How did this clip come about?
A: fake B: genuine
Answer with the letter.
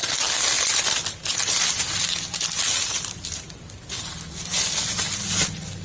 B